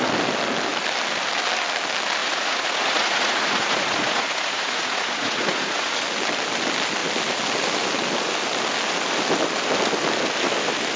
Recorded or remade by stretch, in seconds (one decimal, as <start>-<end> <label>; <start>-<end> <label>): 0.0-2.2 recorded; 2.2-5.9 remade; 5.9-11.0 recorded